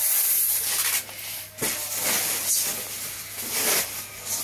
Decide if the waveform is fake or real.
real